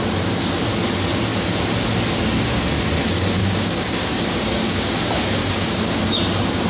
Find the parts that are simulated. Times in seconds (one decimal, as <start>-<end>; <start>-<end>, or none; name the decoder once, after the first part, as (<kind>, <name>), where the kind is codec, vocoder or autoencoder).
3.4-4.9 (codec, DAC); 5.4-6.2